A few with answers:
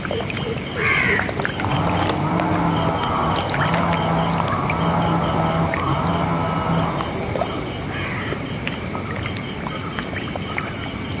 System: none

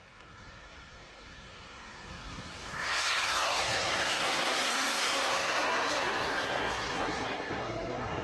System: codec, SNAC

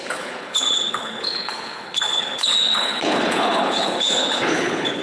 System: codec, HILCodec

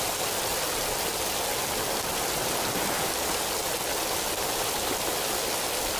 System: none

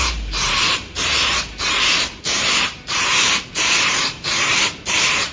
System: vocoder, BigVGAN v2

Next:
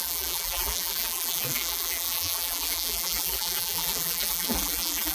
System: vocoder, BigVGAN v2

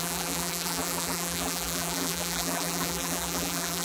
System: vocoder, BigVGAN v2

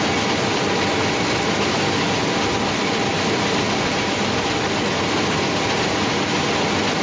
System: none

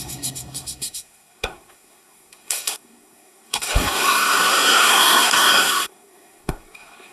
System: codec, SNAC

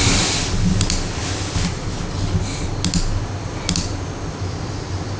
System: none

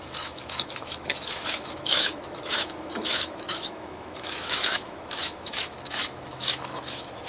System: autoencoder, DAC-VAE